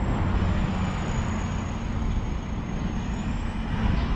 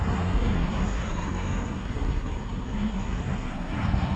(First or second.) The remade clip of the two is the second